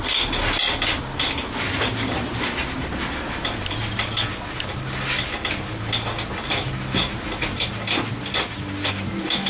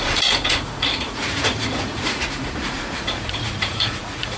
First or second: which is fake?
second